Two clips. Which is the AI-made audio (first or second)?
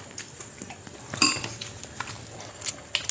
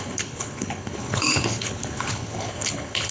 second